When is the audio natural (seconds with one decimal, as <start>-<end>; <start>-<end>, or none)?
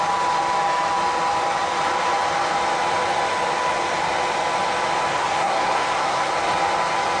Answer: 0.0-5.1; 6.3-7.2